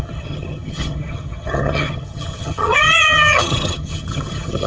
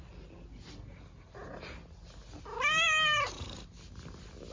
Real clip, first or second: second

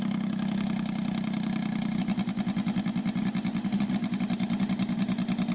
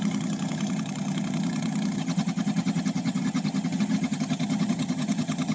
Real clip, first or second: first